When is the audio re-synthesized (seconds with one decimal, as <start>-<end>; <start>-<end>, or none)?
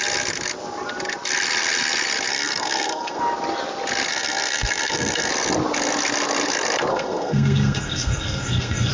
2.3-3.2; 4.1-5.3; 6.9-8.9